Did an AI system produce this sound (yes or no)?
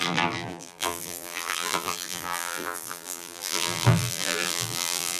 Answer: yes